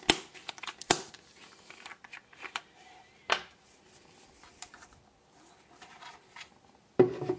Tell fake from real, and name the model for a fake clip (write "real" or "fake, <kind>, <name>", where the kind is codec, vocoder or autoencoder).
real